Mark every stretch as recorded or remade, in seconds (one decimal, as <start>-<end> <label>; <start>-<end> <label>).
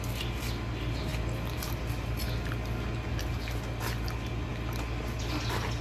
0.0-5.8 recorded